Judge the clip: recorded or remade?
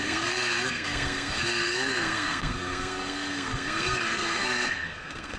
remade